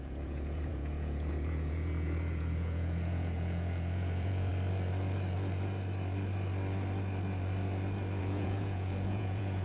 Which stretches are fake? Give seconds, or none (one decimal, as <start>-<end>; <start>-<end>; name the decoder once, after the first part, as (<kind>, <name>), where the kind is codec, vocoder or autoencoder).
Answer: 0.0-4.5 (vocoder, Vocos); 8.2-9.6